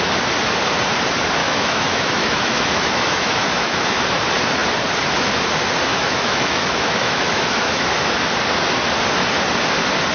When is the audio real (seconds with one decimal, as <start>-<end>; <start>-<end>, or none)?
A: 0.0-1.4; 4.0-5.9; 7.9-10.1